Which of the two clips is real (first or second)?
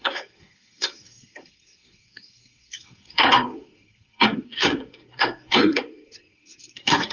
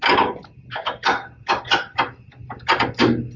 second